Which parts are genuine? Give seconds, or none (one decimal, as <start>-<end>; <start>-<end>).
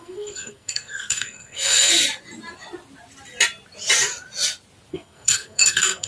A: 1.9-4.9